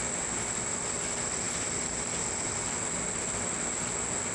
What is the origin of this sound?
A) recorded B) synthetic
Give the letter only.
A